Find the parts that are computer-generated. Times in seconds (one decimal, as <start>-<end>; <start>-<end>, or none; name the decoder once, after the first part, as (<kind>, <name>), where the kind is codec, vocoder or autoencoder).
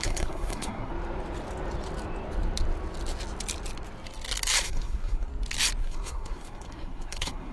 0.0-0.9 (codec, SNAC); 4.6-5.3; 5.8-7.5